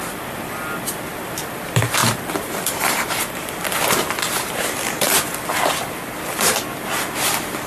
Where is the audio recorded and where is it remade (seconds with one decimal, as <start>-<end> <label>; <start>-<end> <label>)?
0.0-2.0 recorded; 2.0-6.5 remade; 6.5-7.7 recorded